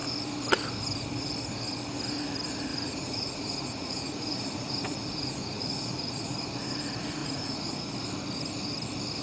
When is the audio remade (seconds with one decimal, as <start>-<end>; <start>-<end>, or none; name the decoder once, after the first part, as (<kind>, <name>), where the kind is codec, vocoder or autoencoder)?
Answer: 2.7-6.5 (vocoder, Vocos); 7.2-7.9